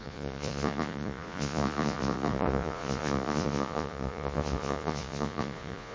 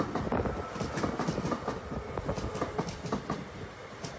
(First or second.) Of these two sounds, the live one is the second